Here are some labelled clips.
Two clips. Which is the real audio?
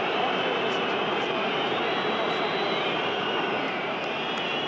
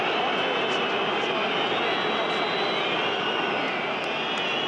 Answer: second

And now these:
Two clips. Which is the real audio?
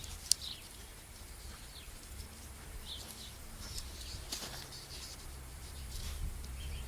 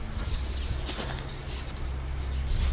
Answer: second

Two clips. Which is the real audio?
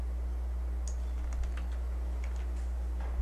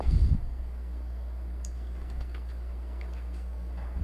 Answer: first